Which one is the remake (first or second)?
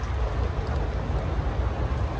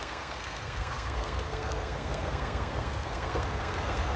second